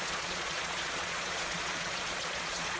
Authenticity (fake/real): fake